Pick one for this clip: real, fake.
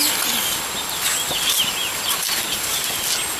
real